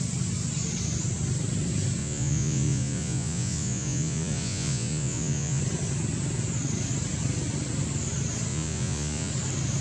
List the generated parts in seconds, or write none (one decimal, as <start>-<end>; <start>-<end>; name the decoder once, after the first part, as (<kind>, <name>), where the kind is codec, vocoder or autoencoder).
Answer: 2.0-5.6 (vocoder, Vocos); 8.5-9.3